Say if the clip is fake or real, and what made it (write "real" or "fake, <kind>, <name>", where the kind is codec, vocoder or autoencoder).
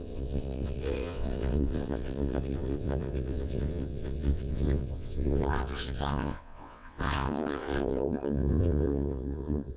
fake, vocoder, WaveNeXt